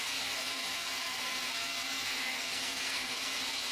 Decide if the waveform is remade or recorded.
remade